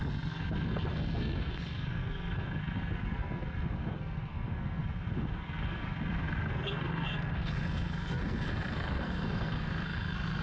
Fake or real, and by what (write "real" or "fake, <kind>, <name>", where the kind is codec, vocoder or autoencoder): fake, codec, SNAC